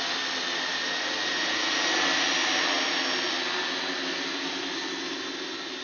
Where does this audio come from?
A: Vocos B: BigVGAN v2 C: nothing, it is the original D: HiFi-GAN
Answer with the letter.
C